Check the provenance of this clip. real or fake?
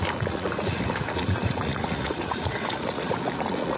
fake